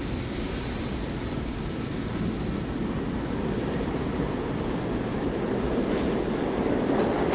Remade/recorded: recorded